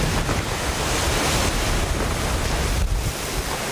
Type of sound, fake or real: real